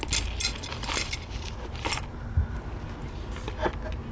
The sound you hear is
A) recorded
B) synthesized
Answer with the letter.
A